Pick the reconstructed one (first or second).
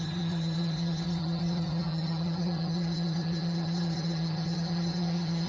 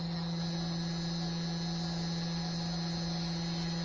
first